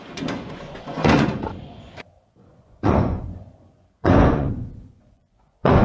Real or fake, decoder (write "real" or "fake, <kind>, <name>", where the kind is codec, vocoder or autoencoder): fake, vocoder, Vocos